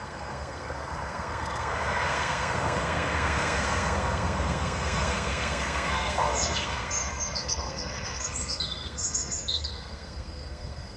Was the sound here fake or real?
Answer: fake